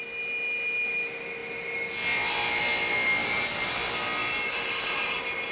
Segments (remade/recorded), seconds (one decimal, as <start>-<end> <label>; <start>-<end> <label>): 0.0-4.2 recorded; 4.2-5.1 remade; 5.1-5.5 recorded